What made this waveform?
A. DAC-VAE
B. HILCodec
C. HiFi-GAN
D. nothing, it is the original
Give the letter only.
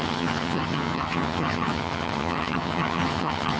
C